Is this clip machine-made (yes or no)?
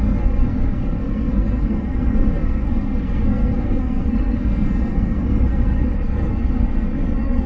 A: yes